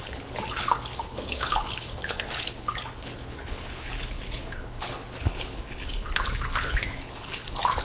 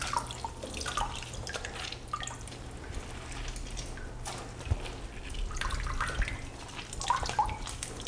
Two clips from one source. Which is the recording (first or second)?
second